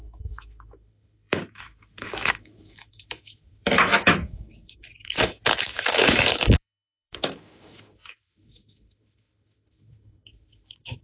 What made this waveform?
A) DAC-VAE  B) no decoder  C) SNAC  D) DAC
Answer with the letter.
A